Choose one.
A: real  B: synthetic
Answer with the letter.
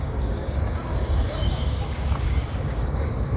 B